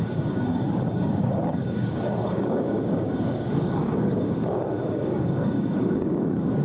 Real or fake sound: fake